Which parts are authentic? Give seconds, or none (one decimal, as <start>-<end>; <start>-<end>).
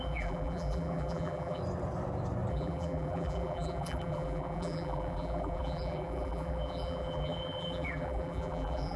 1.6-2.5